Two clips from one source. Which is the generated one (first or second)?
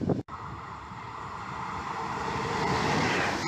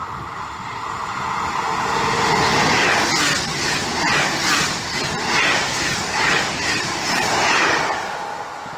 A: first